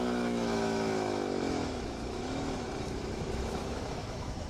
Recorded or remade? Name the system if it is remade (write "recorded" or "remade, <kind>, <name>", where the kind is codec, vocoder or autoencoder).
remade, autoencoder, DAC-VAE